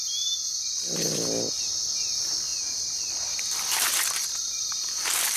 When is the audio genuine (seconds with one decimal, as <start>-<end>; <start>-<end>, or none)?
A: 0.0-5.4